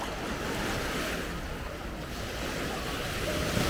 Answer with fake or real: real